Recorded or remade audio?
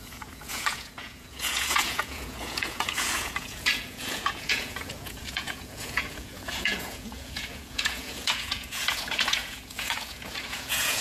remade